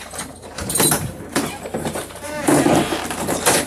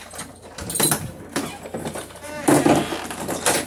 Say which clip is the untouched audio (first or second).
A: second